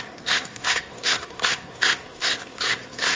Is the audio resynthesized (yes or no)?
yes